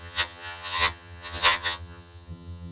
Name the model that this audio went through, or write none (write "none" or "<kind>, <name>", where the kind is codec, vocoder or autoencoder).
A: vocoder, HiFi-GAN